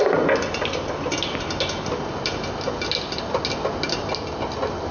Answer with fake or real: real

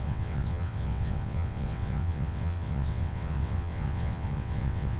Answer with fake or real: fake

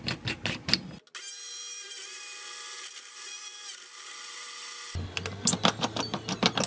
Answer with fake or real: real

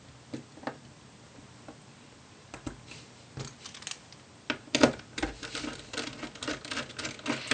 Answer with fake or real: real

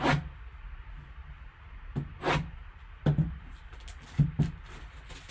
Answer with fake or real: real